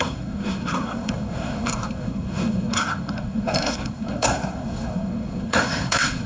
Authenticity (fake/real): fake